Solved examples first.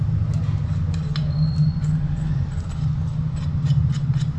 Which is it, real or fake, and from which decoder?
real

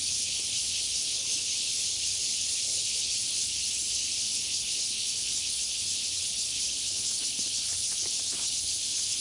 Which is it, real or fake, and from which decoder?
fake, codec, HILCodec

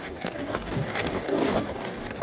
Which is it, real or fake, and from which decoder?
fake, codec, DAC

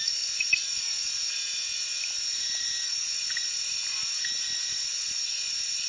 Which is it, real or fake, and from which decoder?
real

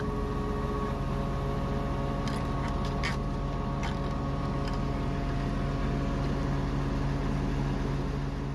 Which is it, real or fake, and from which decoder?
real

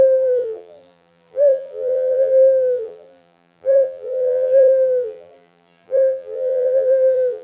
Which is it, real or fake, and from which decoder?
fake, vocoder, BigVGAN v2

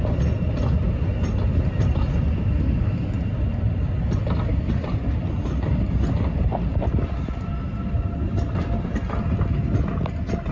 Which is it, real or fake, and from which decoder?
real